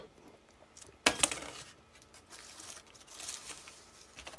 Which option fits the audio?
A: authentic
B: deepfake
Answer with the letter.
A